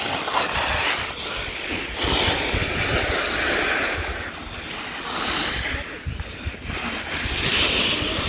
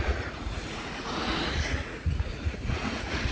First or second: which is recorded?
first